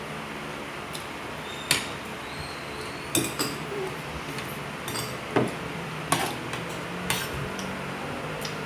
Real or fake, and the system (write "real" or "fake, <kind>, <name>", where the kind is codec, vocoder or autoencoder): real